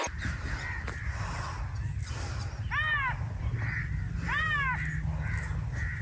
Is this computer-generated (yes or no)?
no